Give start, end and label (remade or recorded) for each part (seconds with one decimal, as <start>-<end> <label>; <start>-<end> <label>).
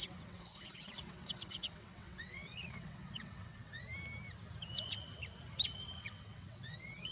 0.0-3.9 remade; 3.9-6.0 recorded; 6.0-7.1 remade